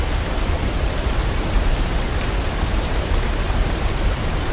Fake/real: fake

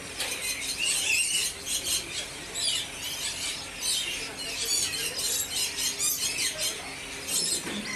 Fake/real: real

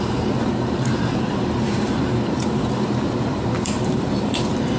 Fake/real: fake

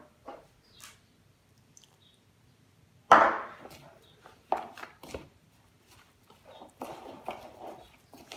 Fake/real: fake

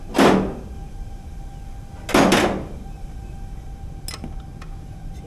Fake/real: real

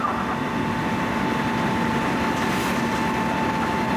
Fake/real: real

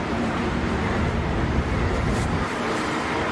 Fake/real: fake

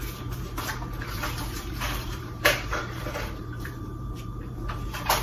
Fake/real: fake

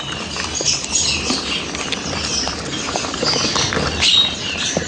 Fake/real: real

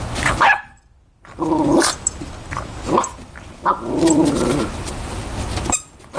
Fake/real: fake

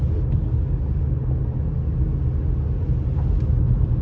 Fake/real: real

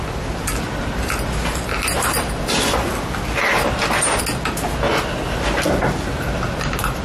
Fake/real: real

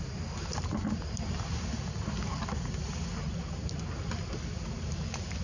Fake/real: real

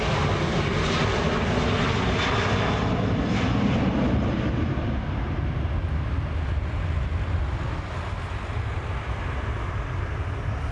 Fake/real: real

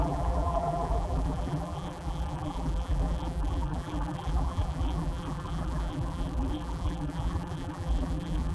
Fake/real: fake